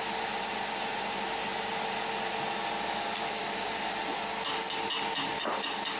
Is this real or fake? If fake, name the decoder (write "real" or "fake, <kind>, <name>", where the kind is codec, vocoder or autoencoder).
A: real